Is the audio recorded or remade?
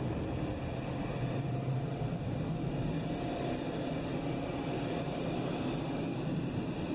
recorded